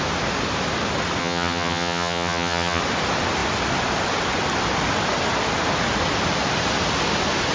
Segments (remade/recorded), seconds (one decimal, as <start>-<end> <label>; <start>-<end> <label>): 0.0-1.2 recorded; 1.2-2.8 remade; 2.8-7.5 recorded